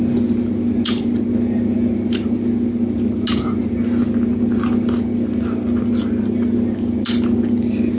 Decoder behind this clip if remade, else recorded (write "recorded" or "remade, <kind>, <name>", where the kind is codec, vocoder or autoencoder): recorded